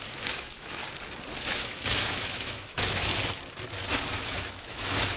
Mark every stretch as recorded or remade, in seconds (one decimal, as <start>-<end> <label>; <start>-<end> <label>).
0.0-0.8 remade; 0.8-1.4 recorded; 1.4-3.1 remade; 3.1-4.2 recorded; 4.2-5.2 remade